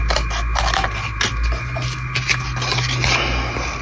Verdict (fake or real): real